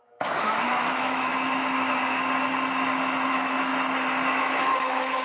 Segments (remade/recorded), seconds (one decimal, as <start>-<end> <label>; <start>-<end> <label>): 0.0-1.3 remade; 1.3-3.3 recorded; 3.3-3.7 remade; 3.7-4.4 recorded; 4.4-5.2 remade